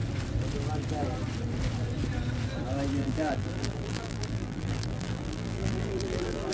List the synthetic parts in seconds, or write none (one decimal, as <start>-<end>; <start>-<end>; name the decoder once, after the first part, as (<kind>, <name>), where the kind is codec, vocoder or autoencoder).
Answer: 3.0-6.5 (vocoder, BigVGAN v2)